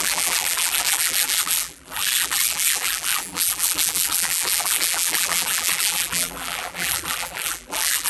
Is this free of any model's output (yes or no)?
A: no